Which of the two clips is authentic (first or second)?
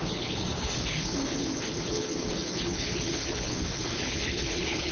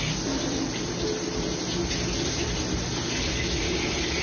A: second